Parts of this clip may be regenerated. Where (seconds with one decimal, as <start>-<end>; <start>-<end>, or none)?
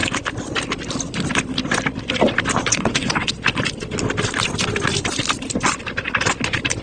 2.7-3.3